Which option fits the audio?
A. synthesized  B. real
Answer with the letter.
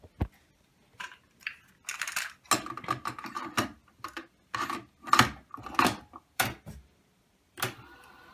B